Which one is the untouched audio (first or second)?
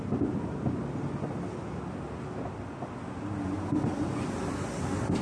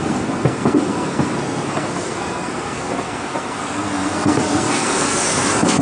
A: first